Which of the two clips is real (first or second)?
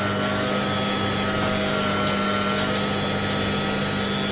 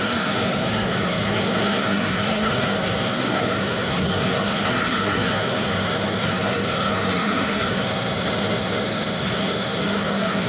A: first